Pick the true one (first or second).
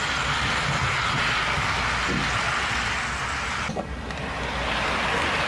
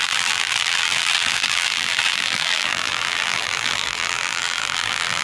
first